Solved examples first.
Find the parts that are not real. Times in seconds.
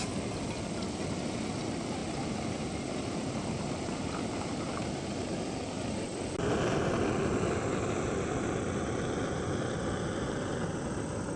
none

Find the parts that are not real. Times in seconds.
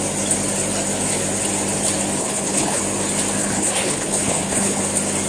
2.2-2.8 (codec, HILCodec); 3.4-4.8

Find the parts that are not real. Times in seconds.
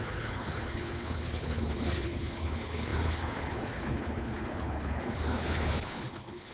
0.0-6.5 (codec, HILCodec)